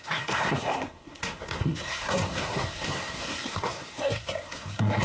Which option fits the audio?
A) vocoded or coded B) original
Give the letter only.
A